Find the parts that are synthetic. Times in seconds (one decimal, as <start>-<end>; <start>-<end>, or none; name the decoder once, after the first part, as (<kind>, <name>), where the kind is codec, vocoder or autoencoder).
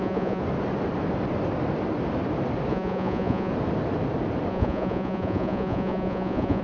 0.0-0.4 (vocoder, Vocos); 2.7-3.5; 4.5-6.6